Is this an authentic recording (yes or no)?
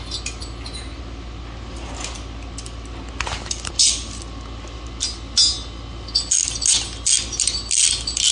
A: yes